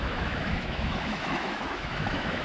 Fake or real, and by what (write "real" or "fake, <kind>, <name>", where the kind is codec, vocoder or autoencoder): fake, autoencoder, DAC-VAE